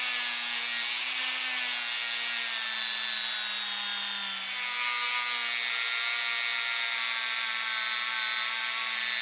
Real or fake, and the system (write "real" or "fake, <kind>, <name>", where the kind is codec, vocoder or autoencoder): real